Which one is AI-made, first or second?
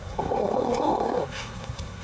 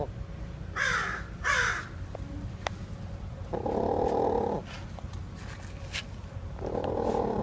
first